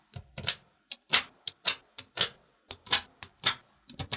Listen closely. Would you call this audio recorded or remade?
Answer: recorded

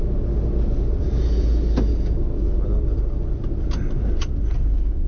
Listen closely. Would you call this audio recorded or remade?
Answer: recorded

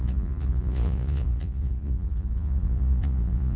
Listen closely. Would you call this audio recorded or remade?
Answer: remade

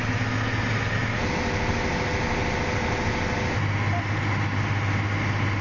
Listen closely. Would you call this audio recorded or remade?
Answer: recorded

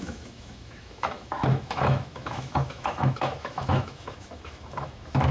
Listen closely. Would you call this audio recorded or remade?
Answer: remade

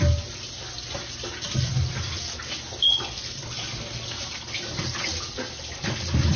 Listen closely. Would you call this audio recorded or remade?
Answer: recorded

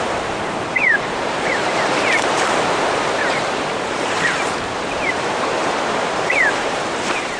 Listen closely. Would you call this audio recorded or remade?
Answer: remade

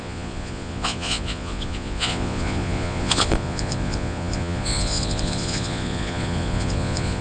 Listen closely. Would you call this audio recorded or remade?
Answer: remade